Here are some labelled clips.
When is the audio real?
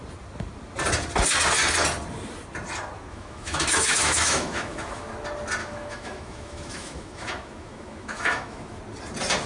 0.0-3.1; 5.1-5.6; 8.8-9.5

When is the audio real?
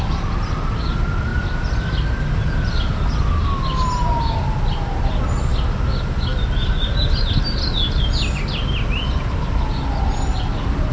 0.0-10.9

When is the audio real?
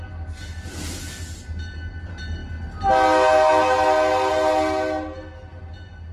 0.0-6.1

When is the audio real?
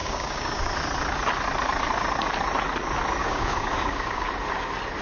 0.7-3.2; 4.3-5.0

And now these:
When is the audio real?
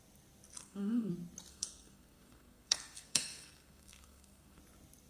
0.0-0.6; 1.1-1.5; 4.6-5.1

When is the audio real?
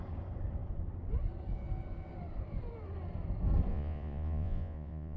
0.0-3.7